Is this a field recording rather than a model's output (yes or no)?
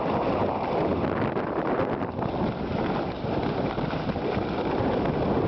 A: yes